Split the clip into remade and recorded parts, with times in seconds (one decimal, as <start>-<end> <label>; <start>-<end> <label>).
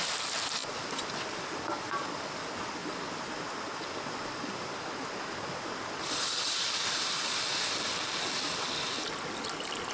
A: 0.0-9.9 recorded